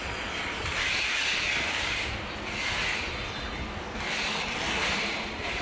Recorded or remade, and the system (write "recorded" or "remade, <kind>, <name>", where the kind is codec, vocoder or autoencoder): recorded